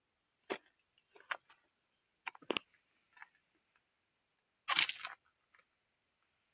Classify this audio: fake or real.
real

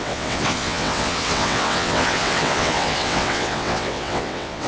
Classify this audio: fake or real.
fake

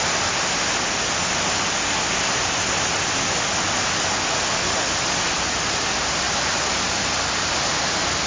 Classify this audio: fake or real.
real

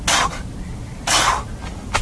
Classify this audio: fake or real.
real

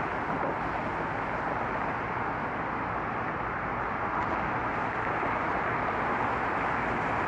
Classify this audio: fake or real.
real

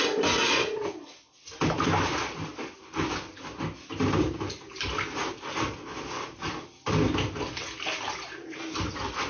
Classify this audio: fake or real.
real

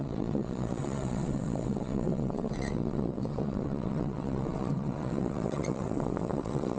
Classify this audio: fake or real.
fake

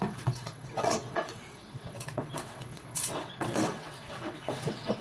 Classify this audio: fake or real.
fake